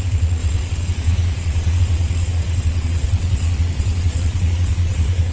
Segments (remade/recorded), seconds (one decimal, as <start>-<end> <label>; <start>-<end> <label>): 0.0-5.3 remade